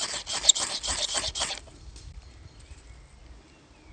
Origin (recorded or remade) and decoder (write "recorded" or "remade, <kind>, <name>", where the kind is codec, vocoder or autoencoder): recorded